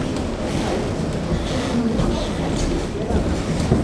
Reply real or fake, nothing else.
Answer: real